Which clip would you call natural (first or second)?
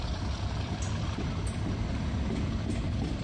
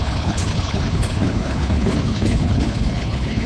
first